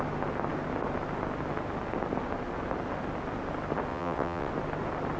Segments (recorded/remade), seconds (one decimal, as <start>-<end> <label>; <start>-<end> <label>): 0.0-3.9 recorded; 3.9-4.5 remade; 4.5-5.2 recorded